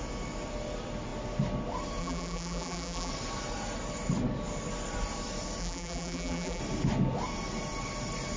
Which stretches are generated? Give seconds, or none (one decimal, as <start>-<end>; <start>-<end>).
2.0-3.1; 5.6-6.6